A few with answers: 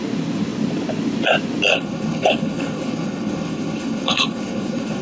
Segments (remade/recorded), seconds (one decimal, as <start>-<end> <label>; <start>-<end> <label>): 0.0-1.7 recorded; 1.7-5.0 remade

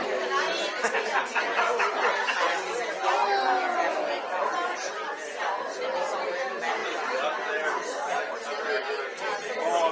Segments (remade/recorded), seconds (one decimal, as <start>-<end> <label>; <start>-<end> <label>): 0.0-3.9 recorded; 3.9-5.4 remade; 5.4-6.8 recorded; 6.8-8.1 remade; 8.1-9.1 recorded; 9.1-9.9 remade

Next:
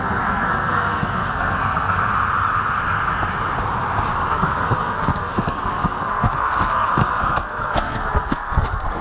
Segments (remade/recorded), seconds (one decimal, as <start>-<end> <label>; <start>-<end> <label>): 0.0-2.1 remade; 2.1-4.3 recorded; 4.3-9.0 remade

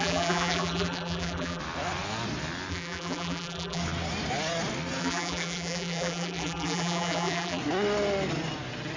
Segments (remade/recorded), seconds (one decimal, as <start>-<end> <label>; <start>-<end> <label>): 0.0-1.6 remade; 1.6-2.7 recorded; 2.7-3.8 remade; 3.8-5.0 recorded; 5.0-7.6 remade; 7.6-9.0 recorded